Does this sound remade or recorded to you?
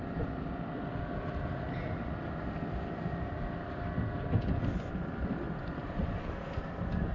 recorded